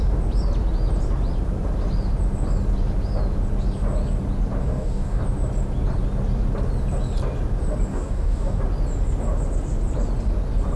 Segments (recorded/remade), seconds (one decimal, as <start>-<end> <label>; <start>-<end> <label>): 0.0-4.6 recorded; 4.6-5.2 remade; 5.2-7.9 recorded; 7.9-8.6 remade; 8.6-10.8 recorded